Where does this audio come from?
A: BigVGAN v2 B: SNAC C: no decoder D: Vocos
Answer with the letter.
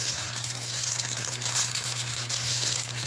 B